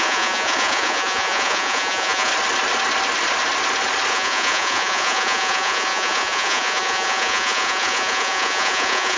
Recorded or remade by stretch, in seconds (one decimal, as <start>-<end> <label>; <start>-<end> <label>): 0.0-2.3 remade; 2.3-4.1 recorded; 4.1-9.2 remade